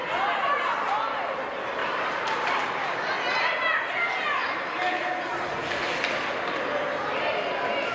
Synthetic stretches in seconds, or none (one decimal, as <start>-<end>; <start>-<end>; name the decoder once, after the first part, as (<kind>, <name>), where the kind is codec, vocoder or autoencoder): 1.8-2.5 (vocoder, BigVGAN v2)